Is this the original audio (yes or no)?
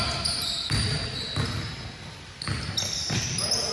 yes